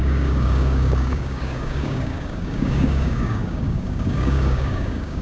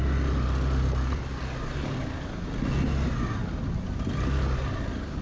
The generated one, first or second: first